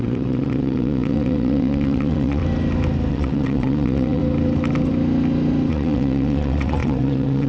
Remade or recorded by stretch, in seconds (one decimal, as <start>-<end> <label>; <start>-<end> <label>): 0.0-2.4 remade; 2.4-3.1 recorded; 3.1-4.2 remade; 4.2-5.7 recorded; 5.7-7.5 remade